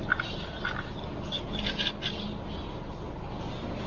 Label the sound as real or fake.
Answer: real